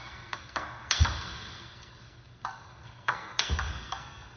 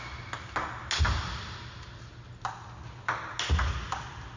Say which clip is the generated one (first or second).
first